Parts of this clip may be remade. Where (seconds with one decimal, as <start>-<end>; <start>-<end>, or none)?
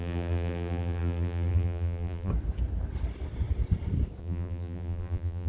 0.0-2.3; 4.2-5.5